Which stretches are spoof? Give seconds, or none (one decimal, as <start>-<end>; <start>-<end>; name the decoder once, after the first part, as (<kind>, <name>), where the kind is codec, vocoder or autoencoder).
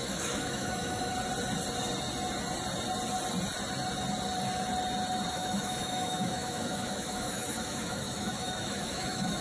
0.0-1.1 (autoencoder, DAC-VAE); 5.3-9.4